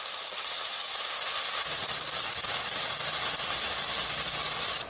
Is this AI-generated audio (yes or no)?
no